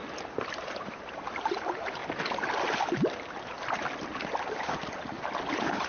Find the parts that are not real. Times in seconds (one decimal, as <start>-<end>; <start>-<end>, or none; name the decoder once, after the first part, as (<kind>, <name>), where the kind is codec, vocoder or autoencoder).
0.5-2.0 (vocoder, BigVGAN v2); 5.5-5.9